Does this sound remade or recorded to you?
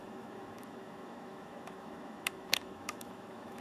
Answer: remade